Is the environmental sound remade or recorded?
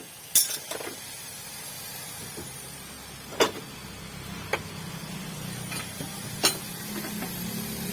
recorded